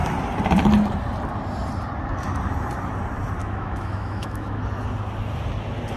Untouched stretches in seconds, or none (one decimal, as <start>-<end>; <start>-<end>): 0.0-3.4; 4.6-6.0